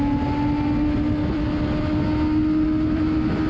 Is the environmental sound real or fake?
real